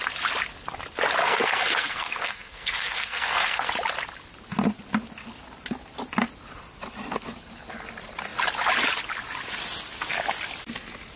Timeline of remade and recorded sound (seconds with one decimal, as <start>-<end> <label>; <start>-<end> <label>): 0.0-1.2 recorded; 1.2-3.7 remade; 3.7-11.2 recorded